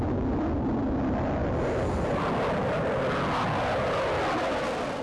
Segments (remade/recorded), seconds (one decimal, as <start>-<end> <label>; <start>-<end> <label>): 0.0-5.0 recorded